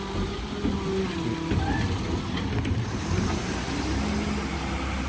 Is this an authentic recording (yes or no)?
yes